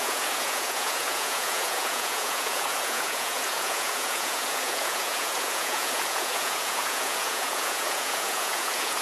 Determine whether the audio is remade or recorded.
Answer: remade